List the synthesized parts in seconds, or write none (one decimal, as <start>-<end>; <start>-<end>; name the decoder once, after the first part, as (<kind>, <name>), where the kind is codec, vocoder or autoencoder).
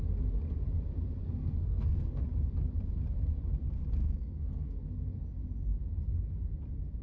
1.2-2.2 (codec, SNAC); 4.0-4.8